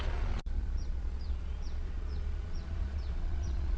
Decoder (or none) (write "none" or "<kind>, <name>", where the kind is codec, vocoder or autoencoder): vocoder, Vocos